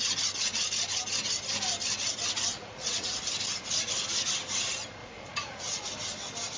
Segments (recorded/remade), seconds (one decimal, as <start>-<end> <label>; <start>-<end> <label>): 0.0-2.5 recorded; 2.5-3.2 remade; 3.2-5.0 recorded; 5.0-5.9 remade; 5.9-6.6 recorded